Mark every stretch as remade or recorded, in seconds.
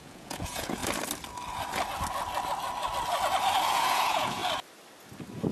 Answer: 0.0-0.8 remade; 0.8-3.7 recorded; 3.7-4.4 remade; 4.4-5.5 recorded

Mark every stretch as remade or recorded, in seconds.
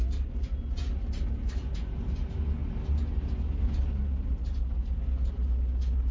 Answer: 0.0-6.1 recorded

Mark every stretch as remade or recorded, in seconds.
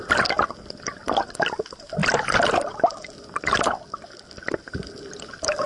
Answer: 0.0-5.7 recorded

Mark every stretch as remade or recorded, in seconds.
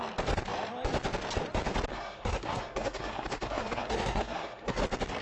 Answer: 0.0-1.9 recorded; 1.9-4.8 remade; 4.8-5.2 recorded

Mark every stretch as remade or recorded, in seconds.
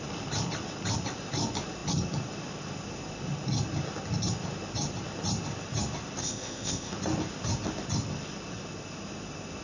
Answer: 0.0-6.2 recorded; 6.2-6.9 remade; 6.9-9.6 recorded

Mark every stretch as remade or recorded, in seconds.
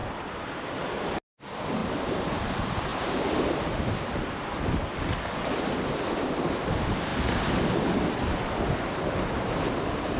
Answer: 0.0-0.9 remade; 0.9-1.8 recorded; 1.8-2.4 remade; 2.4-2.9 recorded; 2.9-3.4 remade; 3.4-10.2 recorded